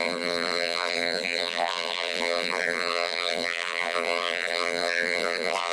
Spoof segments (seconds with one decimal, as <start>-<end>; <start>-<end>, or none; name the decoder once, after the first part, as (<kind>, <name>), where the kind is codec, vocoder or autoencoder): 0.0-5.7 (vocoder, BigVGAN v2)